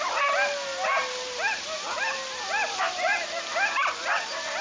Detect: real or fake real